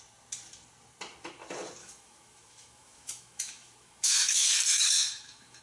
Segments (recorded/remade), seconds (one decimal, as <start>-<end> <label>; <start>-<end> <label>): 0.0-1.8 recorded; 1.8-5.6 remade